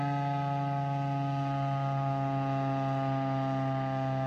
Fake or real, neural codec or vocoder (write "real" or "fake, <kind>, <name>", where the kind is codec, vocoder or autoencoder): real